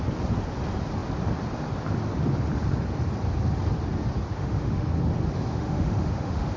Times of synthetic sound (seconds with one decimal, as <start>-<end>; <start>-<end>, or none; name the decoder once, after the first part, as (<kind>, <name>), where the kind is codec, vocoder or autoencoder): 4.3-4.9 (autoencoder, DAC-VAE); 5.5-6.6